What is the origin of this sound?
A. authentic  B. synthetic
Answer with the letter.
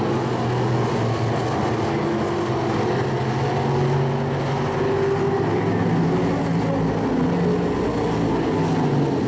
A